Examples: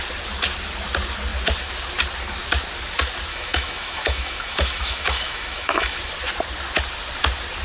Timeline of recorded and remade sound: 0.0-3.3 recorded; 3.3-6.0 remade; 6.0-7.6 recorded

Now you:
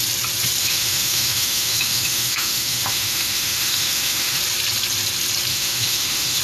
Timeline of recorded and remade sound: 0.0-0.6 recorded; 0.6-4.4 remade; 4.4-5.5 recorded; 5.5-6.4 remade

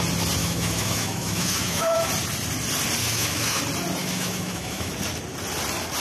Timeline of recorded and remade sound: 0.0-0.4 recorded; 0.4-2.1 remade; 2.1-3.0 recorded; 3.0-3.6 remade; 3.6-4.0 recorded; 4.0-4.9 remade; 4.9-6.0 recorded

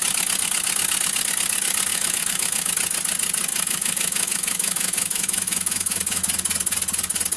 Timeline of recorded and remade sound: 0.0-1.9 recorded; 1.9-2.7 remade; 2.7-3.5 recorded; 3.5-6.2 remade; 6.2-7.4 recorded

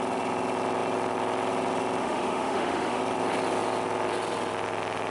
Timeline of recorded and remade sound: 0.0-2.0 recorded; 2.0-3.0 remade; 3.0-5.1 recorded

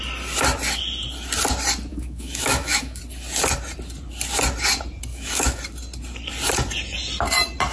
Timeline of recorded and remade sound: 0.0-1.9 recorded; 1.9-3.0 remade; 3.0-5.1 recorded; 5.1-5.6 remade; 5.6-7.7 recorded

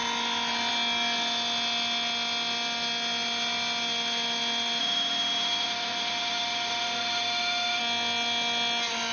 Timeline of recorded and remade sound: 0.0-4.8 recorded; 4.8-7.8 remade; 7.8-9.1 recorded

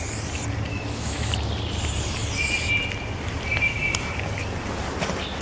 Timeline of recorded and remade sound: 0.0-0.7 recorded; 0.7-1.3 remade; 1.3-5.4 recorded